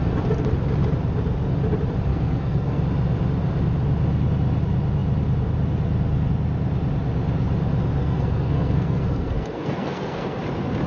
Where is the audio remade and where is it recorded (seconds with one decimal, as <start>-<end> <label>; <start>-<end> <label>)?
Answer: 0.0-2.1 recorded; 2.1-2.8 remade; 2.8-8.0 recorded; 8.0-10.4 remade; 10.4-10.9 recorded